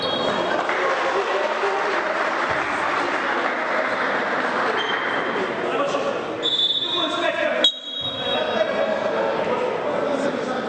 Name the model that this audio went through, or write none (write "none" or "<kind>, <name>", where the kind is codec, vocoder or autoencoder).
none